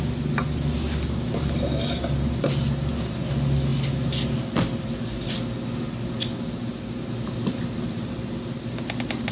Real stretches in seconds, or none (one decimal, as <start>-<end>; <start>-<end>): 0.0-9.3